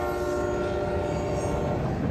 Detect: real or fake real